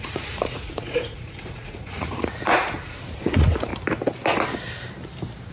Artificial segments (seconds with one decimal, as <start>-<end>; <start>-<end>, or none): 0.0-3.7